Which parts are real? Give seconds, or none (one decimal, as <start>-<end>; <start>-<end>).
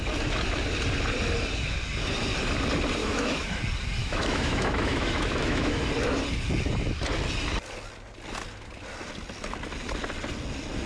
0.0-3.0; 3.6-4.0; 5.8-10.9